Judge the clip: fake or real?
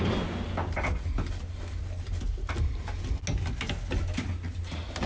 real